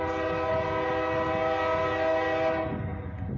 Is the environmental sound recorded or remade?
recorded